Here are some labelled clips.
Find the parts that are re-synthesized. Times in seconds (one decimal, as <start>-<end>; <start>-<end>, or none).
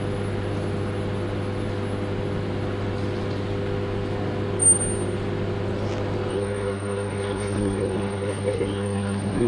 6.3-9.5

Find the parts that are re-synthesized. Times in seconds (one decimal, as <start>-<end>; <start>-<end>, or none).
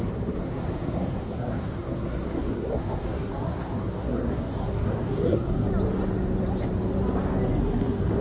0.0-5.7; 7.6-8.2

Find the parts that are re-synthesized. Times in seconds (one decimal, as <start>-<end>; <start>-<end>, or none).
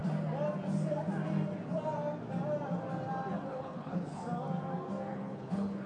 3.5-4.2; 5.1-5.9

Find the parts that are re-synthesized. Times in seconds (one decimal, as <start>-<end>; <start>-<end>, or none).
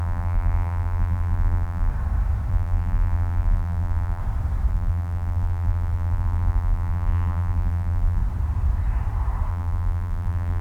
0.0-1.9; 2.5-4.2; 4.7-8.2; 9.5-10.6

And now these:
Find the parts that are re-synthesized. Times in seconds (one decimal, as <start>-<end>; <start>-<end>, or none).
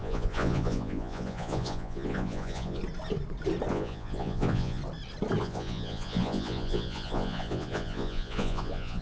0.0-2.8; 3.7-4.8; 5.4-9.0